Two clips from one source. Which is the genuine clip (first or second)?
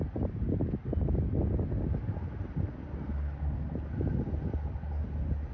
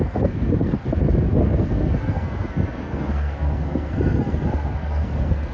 first